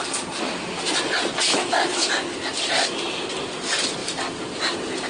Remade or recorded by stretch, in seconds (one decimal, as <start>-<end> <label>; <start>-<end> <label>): 0.0-1.5 recorded; 1.5-2.1 remade; 2.1-5.1 recorded